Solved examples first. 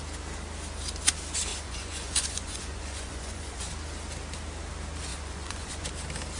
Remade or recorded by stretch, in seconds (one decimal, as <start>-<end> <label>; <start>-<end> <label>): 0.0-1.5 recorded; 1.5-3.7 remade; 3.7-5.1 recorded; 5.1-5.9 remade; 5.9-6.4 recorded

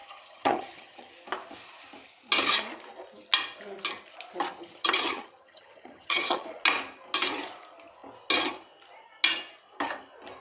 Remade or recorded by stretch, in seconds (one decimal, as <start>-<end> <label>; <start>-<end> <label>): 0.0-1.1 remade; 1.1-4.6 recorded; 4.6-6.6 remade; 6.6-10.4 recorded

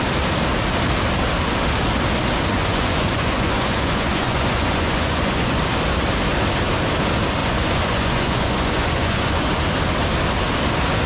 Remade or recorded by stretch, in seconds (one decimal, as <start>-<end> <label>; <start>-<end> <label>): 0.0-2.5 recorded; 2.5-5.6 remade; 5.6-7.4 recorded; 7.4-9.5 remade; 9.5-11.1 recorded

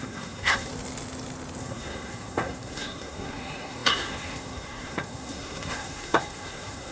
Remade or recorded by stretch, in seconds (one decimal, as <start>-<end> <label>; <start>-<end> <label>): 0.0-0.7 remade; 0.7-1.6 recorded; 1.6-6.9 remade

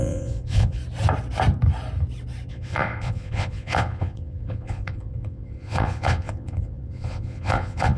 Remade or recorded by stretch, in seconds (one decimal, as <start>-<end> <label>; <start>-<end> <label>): 0.0-0.8 remade; 0.8-2.5 recorded; 2.5-8.0 remade